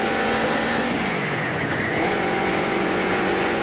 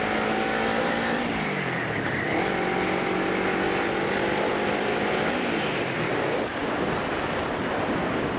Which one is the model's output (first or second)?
first